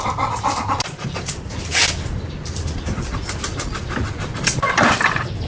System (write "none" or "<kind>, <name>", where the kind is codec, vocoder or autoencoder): none